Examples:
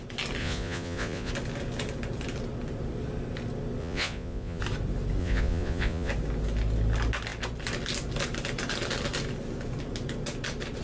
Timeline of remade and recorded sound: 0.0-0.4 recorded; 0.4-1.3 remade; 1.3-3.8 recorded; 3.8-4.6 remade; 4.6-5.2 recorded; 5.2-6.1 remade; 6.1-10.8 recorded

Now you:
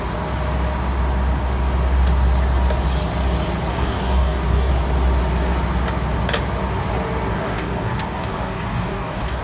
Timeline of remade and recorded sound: 0.0-3.7 recorded; 3.7-4.7 remade; 4.7-7.3 recorded; 7.3-9.4 remade

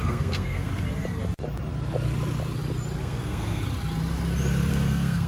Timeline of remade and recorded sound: 0.0-0.7 remade; 0.7-3.0 recorded; 3.0-3.6 remade; 3.6-4.7 recorded; 4.7-5.3 remade

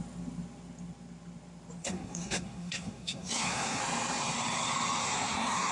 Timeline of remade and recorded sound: 0.0-1.8 recorded; 1.8-3.8 remade; 3.8-5.0 recorded; 5.0-5.7 remade

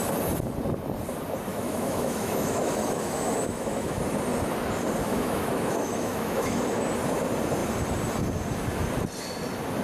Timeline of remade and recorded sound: 0.0-1.5 recorded; 1.5-4.0 remade; 4.0-5.1 recorded; 5.1-6.6 remade; 6.6-9.8 recorded